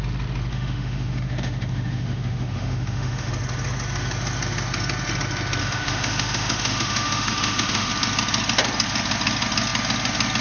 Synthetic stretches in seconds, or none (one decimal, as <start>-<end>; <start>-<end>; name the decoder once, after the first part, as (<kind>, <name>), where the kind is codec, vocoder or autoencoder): 0.5-3.3 (autoencoder, DAC-VAE); 5.6-7.9